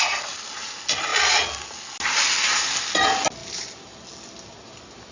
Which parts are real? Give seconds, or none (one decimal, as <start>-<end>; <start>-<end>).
0.0-5.1